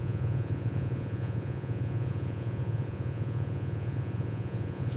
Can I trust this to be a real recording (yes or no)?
no